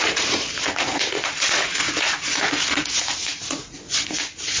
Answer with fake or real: fake